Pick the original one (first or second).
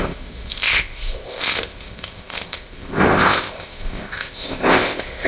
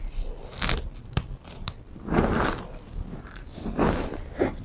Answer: second